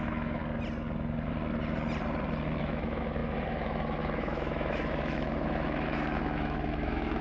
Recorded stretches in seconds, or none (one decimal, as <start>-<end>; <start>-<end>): 0.4-2.6